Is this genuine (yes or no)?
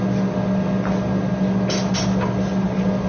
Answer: yes